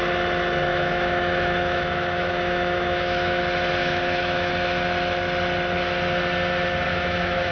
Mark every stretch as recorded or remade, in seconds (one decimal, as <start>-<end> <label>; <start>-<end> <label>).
0.0-0.7 recorded; 0.7-3.4 remade; 3.4-3.8 recorded; 3.8-4.5 remade; 4.5-6.9 recorded; 6.9-7.5 remade